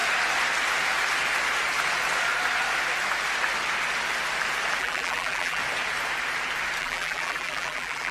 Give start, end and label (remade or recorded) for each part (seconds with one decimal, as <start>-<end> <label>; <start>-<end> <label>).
0.0-4.8 recorded; 4.8-5.6 remade; 5.6-6.8 recorded; 6.8-8.1 remade